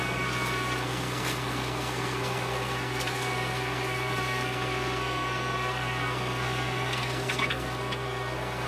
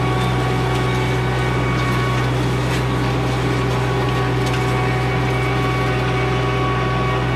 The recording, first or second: second